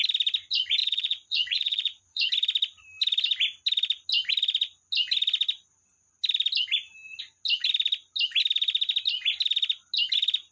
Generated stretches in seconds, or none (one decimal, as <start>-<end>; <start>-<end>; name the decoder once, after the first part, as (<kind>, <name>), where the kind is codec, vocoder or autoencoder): 0.8-2.3 (vocoder, Vocos)